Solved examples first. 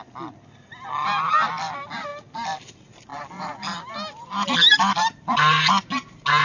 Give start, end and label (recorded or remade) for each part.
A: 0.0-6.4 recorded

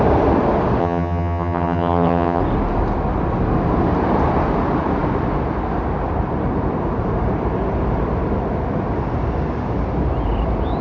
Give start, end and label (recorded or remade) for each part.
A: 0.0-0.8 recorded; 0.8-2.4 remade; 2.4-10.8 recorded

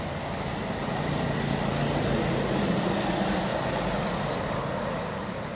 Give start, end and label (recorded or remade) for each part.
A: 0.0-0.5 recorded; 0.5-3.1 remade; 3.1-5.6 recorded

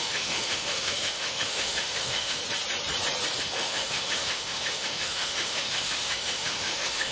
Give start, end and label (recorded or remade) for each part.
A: 0.0-2.4 remade; 2.4-3.4 recorded; 3.4-7.1 remade